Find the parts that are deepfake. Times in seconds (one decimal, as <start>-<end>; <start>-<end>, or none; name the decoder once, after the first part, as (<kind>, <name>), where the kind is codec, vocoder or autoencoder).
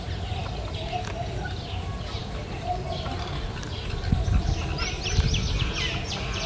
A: none